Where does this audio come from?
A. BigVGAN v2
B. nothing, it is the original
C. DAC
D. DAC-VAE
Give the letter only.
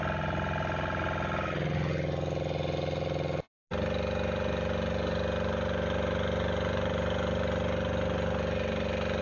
B